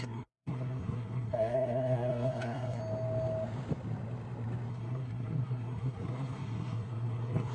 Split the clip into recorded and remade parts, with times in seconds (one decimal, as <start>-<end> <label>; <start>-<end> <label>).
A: 0.0-2.8 remade; 2.8-4.7 recorded; 4.7-7.5 remade